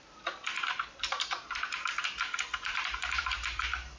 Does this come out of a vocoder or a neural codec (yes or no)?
yes